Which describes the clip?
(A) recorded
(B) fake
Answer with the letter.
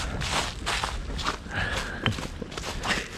A